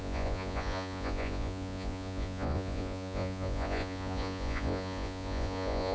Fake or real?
fake